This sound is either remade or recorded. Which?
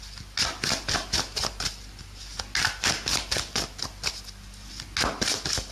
recorded